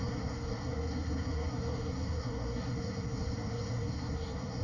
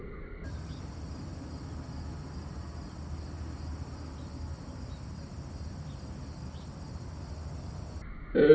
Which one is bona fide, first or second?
second